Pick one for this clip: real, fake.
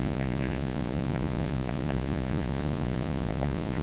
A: fake